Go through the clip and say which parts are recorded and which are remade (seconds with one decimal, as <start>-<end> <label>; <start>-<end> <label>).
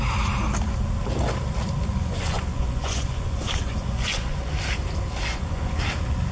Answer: 0.0-2.0 recorded; 2.0-4.5 remade; 4.5-5.3 recorded; 5.3-5.8 remade; 5.8-6.3 recorded